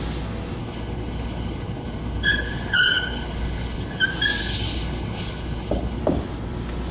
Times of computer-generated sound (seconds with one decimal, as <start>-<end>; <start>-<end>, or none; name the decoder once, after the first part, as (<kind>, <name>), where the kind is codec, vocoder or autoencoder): 0.6-4.0 (codec, HILCodec); 4.4-6.0